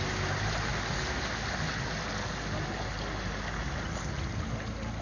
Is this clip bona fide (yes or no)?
yes